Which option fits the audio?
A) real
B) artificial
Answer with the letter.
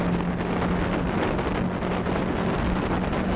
A